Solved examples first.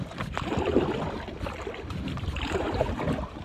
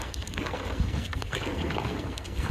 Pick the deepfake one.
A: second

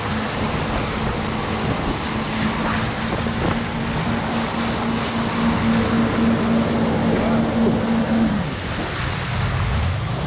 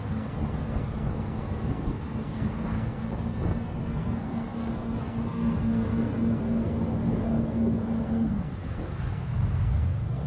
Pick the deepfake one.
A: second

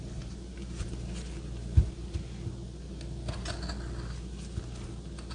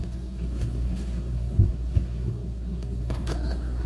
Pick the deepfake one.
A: second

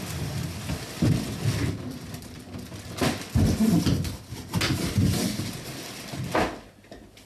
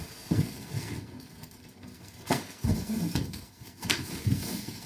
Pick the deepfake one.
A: second